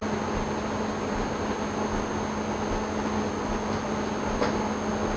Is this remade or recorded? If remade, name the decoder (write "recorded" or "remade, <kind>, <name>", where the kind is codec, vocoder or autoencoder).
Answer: recorded